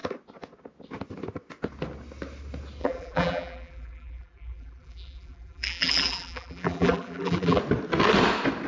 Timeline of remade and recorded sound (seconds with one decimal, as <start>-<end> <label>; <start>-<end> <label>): 0.0-2.8 recorded; 2.8-7.6 remade; 7.6-8.7 recorded